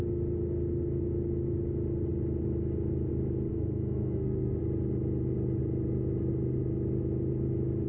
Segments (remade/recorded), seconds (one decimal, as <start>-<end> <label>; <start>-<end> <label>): 0.0-3.5 recorded; 3.5-4.6 remade; 4.6-7.9 recorded